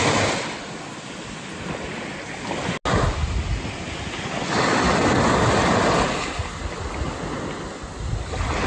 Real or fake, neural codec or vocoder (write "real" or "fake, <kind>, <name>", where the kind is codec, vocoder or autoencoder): real